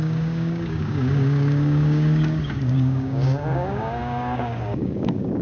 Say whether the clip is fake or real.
fake